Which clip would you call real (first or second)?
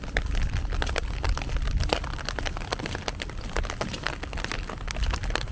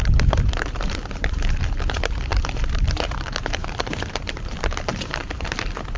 first